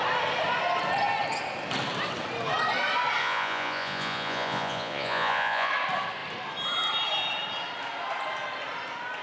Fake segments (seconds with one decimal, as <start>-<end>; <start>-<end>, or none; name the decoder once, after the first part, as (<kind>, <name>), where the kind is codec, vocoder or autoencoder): 3.2-5.7 (vocoder, Vocos)